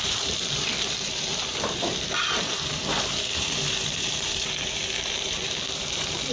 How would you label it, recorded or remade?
remade